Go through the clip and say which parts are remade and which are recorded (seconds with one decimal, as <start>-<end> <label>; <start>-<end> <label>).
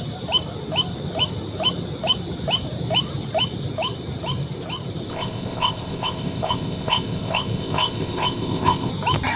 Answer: 0.0-5.1 recorded; 5.1-8.9 remade; 8.9-9.4 recorded